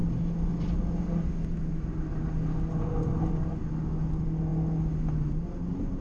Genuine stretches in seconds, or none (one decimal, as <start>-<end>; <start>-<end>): 0.0-6.0